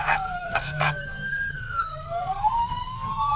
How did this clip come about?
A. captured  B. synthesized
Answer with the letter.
B